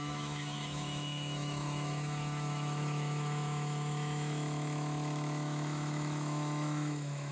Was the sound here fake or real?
fake